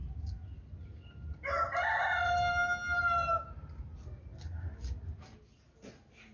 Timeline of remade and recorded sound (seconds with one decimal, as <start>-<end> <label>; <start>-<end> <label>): 0.0-6.3 recorded